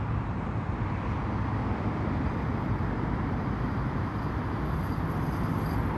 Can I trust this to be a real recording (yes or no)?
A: yes